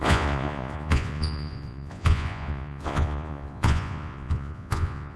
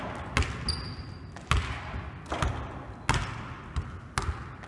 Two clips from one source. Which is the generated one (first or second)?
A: first